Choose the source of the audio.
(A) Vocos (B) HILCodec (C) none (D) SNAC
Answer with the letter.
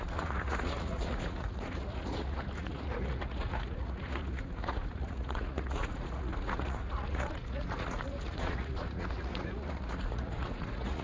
A